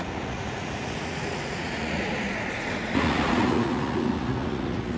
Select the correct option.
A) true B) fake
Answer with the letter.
B